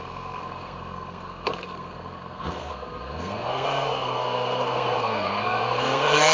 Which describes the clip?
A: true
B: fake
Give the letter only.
B